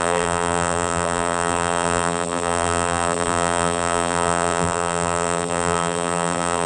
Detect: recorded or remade remade